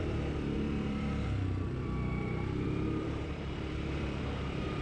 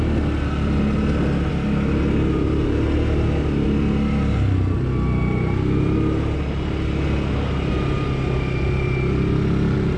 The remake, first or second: first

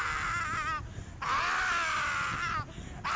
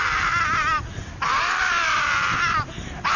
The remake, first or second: second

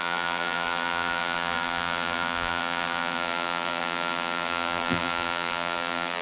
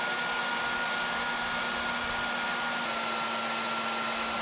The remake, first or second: first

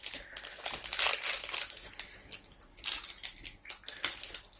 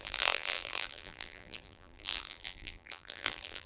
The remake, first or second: second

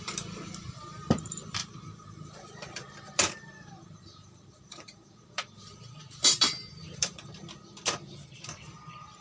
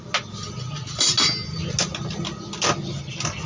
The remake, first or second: first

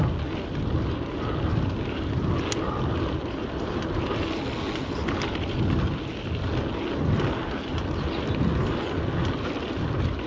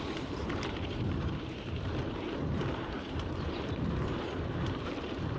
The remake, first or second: second